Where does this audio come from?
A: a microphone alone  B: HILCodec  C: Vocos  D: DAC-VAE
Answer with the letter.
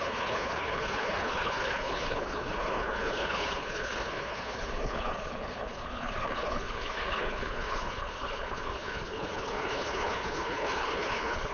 B